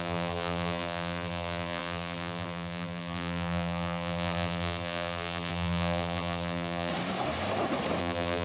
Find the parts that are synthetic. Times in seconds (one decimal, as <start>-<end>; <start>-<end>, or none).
0.0-6.9; 8.0-8.4

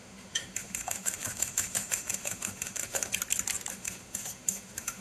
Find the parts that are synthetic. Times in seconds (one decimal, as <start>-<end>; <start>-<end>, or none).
0.0-3.1; 3.7-5.0

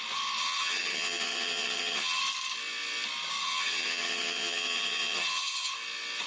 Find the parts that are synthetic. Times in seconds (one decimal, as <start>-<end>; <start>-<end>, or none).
0.4-2.2; 3.4-5.7

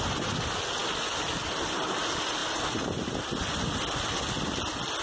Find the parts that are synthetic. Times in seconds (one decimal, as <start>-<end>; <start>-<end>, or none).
none

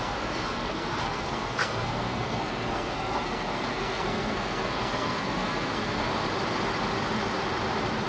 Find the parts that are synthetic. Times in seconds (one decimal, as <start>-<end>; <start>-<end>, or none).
0.0-6.1

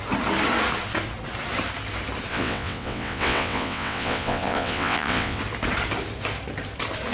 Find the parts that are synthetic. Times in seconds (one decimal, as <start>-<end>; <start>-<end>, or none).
2.3-5.4

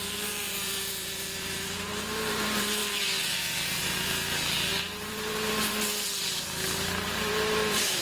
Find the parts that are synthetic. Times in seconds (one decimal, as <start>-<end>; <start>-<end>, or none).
0.0-8.0